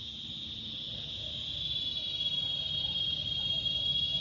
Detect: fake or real real